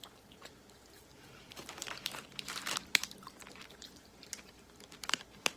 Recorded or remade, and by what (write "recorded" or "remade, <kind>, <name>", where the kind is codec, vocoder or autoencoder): remade, vocoder, BigVGAN v2